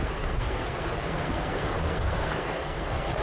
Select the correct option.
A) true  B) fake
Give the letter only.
B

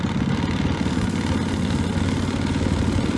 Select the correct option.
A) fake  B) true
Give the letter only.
B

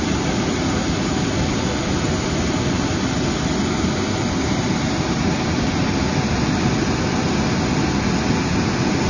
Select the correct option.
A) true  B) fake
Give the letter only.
A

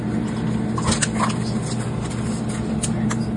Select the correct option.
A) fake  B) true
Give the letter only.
B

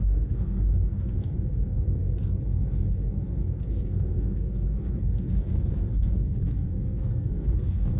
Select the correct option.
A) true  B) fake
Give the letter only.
B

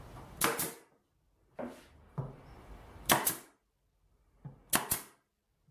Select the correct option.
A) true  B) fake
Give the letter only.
A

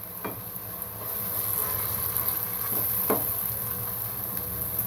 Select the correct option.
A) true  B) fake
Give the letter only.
A